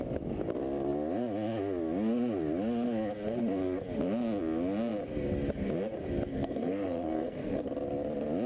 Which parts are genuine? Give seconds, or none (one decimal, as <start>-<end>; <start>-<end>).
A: 0.0-6.3; 7.7-8.5